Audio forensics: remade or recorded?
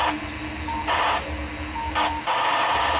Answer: recorded